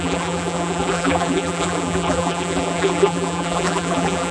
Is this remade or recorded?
remade